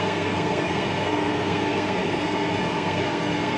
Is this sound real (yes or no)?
no